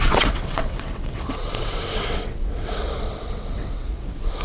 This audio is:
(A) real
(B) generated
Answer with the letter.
B